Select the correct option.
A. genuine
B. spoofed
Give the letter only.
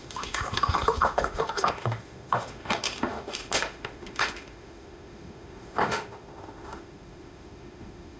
B